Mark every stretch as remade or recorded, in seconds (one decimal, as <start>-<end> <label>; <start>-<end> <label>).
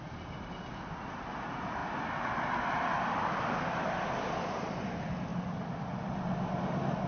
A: 0.0-7.1 recorded